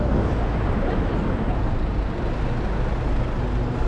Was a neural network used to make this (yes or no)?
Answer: no